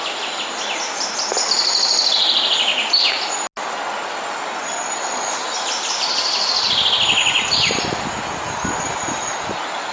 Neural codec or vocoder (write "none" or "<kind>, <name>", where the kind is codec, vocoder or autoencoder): none